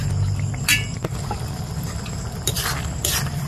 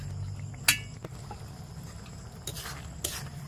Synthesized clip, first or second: first